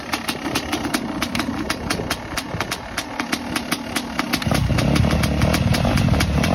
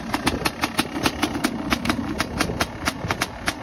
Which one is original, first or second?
second